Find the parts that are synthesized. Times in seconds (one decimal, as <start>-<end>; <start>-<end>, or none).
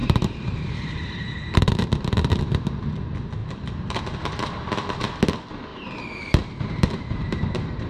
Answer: 0.0-2.4; 3.4-4.0; 5.7-7.9